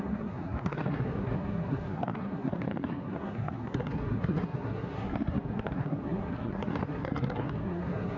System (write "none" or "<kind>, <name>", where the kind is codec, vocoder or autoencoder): codec, SNAC